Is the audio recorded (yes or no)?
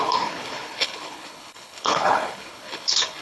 no